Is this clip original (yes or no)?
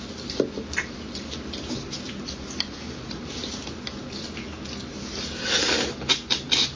yes